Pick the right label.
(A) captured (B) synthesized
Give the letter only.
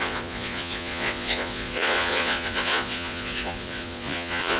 B